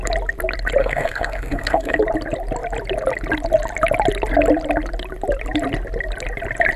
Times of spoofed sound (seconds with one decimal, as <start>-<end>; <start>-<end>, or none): 0.8-2.0